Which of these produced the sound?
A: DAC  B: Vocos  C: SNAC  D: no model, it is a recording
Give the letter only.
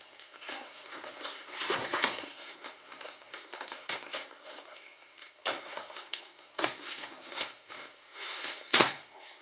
C